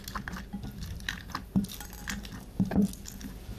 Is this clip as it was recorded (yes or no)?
yes